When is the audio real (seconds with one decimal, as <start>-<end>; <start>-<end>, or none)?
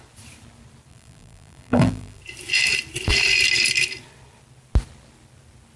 0.0-0.9; 2.2-5.8